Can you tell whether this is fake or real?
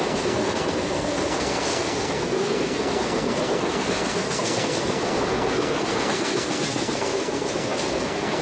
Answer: fake